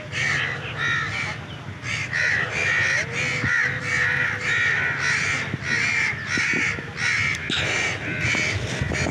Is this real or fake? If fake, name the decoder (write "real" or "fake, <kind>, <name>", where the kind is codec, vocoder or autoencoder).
real